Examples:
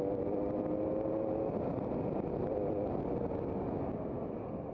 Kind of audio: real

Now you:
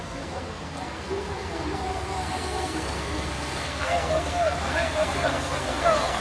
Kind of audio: fake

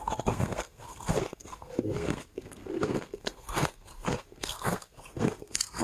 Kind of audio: fake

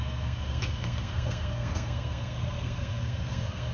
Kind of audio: fake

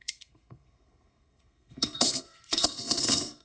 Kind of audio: fake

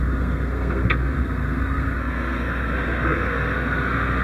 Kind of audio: fake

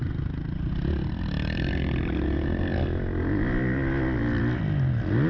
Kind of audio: real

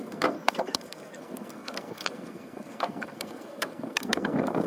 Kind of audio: fake